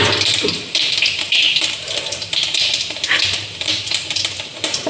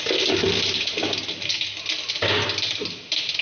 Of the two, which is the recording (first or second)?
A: second